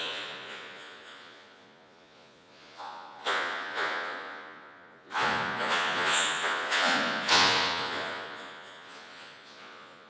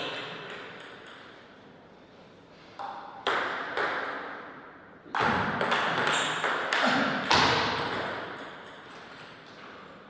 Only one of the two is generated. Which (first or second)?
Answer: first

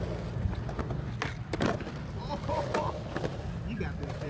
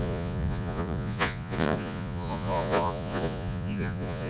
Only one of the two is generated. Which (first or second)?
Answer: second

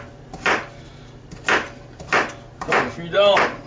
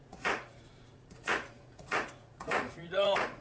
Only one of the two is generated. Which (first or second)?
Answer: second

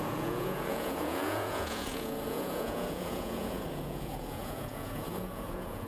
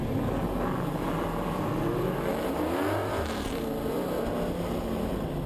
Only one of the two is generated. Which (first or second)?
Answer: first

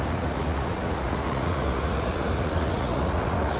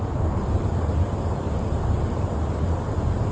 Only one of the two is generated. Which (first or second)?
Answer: first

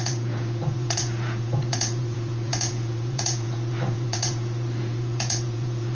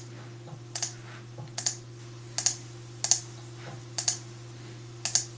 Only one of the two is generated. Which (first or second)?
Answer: first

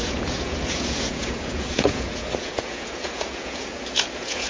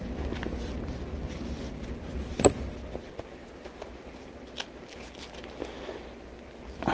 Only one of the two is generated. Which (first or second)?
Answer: first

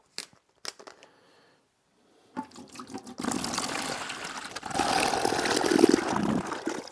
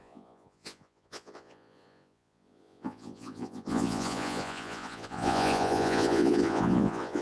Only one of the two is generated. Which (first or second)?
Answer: second